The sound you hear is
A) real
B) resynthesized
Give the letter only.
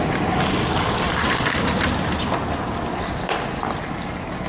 A